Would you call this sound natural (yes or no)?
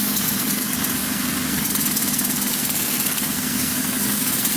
no